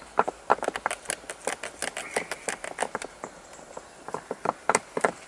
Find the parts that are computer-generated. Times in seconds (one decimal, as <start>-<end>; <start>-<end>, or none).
none